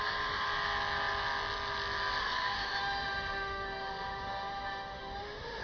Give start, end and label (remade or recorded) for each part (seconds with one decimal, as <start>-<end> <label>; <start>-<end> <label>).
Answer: 0.0-2.2 recorded; 2.2-5.6 remade